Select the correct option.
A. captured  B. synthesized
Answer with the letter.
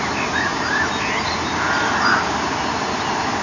A